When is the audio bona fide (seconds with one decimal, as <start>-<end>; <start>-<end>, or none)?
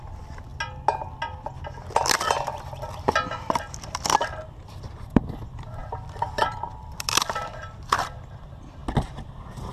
0.5-3.3